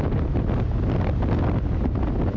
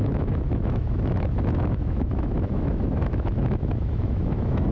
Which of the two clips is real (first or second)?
first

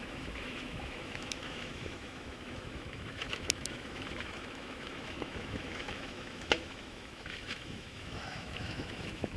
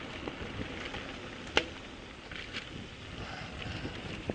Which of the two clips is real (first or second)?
second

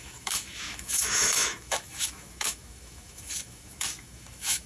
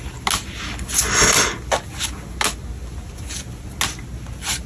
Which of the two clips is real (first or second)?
second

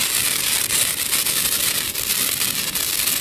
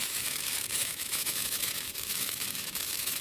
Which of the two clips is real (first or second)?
first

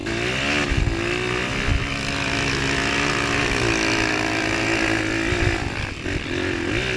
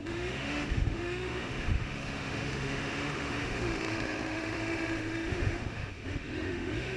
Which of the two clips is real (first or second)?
first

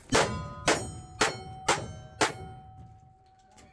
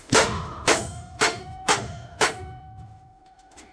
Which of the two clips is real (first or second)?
first